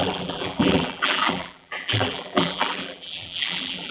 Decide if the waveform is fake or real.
fake